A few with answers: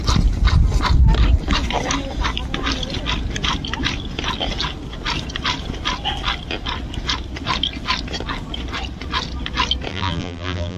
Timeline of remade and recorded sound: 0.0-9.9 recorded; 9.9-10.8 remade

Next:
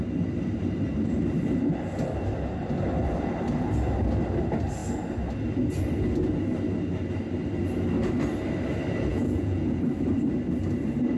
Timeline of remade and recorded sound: 0.0-9.1 recorded; 9.1-9.8 remade; 9.8-11.2 recorded

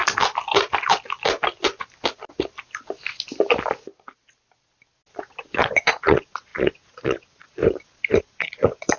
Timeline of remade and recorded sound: 0.0-5.2 recorded; 5.2-7.6 remade; 7.6-8.2 recorded; 8.2-9.0 remade

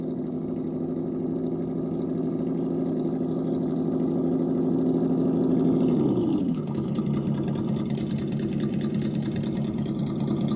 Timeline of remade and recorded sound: 0.0-6.3 recorded; 6.3-7.0 remade; 7.0-10.6 recorded

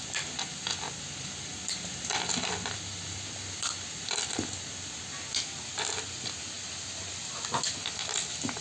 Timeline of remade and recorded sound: 0.0-8.6 recorded